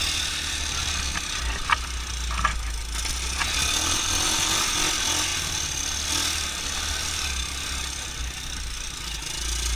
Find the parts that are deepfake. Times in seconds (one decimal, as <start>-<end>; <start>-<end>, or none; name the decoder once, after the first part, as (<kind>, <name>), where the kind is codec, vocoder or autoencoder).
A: none